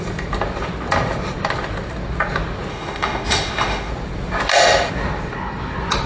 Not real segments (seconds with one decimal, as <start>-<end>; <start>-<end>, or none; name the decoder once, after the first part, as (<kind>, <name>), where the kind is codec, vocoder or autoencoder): 2.7-3.9 (autoencoder, DAC-VAE)